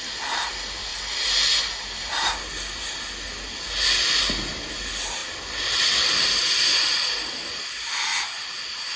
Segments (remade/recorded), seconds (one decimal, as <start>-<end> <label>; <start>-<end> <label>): 0.0-9.0 recorded